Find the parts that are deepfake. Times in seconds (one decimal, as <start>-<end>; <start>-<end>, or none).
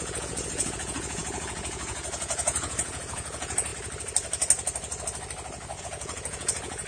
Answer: 0.0-3.7; 5.8-6.9